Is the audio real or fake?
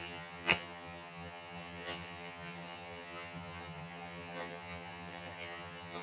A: fake